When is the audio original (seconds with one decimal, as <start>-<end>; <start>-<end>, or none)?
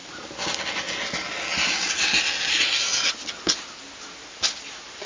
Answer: 0.0-5.1